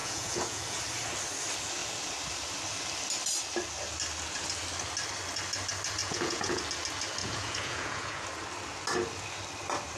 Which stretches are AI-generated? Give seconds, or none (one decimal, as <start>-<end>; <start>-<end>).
0.0-0.8; 6.0-6.6; 7.2-8.2